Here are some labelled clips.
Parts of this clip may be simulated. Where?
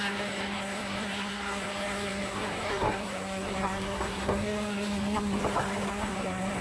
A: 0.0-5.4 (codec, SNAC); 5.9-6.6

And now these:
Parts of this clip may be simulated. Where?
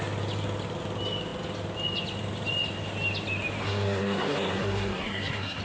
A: 3.6-5.6 (codec, SNAC)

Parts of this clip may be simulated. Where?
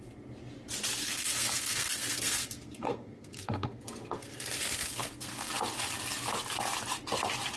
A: 1.0-5.5 (codec, SNAC)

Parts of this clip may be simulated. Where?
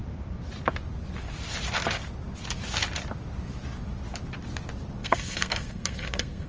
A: 5.0-6.5 (codec, SNAC)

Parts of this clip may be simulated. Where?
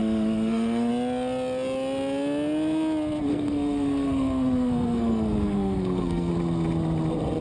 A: 0.0-0.9 (codec, SNAC); 3.3-6.3